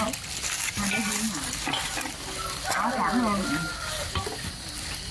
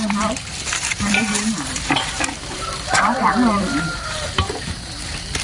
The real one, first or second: first